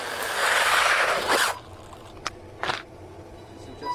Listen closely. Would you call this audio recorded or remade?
recorded